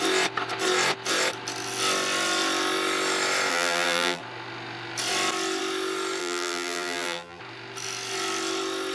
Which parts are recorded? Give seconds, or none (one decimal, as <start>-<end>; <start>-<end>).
0.0-3.5; 4.2-6.2; 7.4-8.9